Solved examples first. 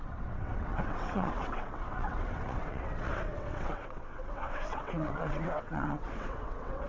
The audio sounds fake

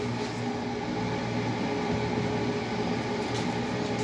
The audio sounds real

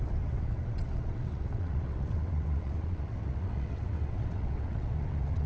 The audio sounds fake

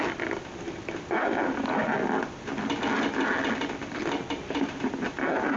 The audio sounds real